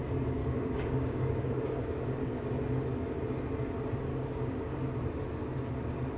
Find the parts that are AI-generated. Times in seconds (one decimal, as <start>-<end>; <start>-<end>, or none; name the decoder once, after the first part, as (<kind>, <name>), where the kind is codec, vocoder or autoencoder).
0.4-2.7 (codec, DAC); 4.1-4.9